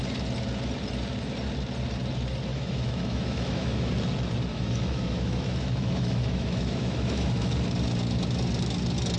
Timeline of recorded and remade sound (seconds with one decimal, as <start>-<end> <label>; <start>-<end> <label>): 0.0-2.5 recorded; 2.5-3.9 remade; 3.9-4.5 recorded; 4.5-7.5 remade; 7.5-9.2 recorded